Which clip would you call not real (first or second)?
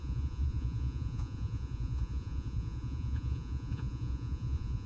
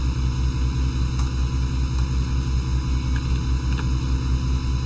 first